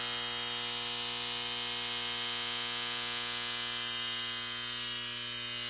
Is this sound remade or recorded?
recorded